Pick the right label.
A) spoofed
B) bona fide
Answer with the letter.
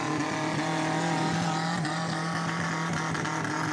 B